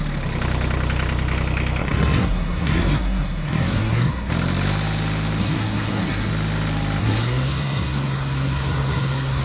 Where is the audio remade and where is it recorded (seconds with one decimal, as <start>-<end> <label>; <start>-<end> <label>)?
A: 0.0-1.8 recorded; 1.8-4.3 remade; 4.3-5.4 recorded; 5.4-6.3 remade; 6.3-7.0 recorded; 7.0-9.4 remade